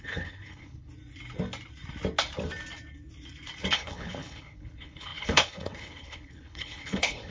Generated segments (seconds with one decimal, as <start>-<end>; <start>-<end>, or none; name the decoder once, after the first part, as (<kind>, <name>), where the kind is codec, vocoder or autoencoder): 0.0-0.9 (codec, HILCodec); 3.7-7.3

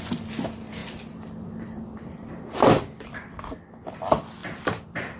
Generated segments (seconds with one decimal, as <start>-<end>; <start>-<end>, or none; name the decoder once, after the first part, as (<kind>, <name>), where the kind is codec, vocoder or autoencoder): 0.0-5.2 (vocoder, BigVGAN v2)

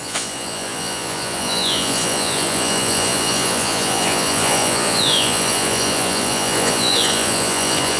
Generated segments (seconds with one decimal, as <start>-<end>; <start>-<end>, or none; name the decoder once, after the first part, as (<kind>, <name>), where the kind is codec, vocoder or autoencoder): 0.0-8.0 (vocoder, Vocos)

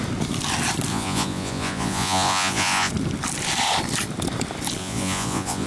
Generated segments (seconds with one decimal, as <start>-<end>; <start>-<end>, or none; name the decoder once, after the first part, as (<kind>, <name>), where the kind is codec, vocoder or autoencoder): 0.9-2.9 (vocoder, Vocos); 4.8-5.7